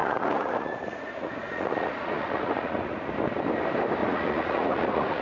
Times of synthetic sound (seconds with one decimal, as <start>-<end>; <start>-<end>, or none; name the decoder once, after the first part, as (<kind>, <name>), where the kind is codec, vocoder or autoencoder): 0.0-3.1 (vocoder, Vocos); 4.0-5.2